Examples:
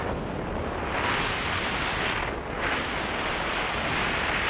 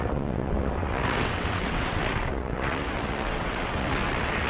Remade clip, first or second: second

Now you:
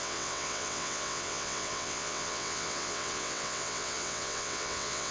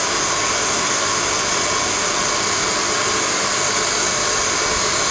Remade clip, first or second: first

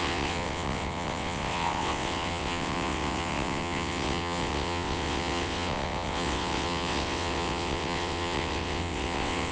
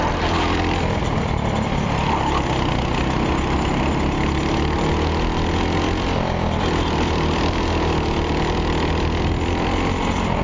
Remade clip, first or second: first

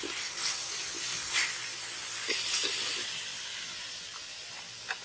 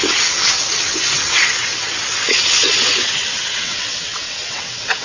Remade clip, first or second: second